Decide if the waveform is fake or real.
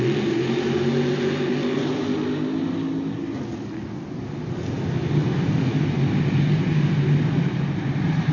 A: real